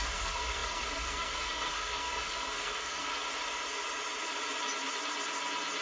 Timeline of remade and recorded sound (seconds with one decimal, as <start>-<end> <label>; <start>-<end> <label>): 0.0-3.1 remade; 3.1-5.8 recorded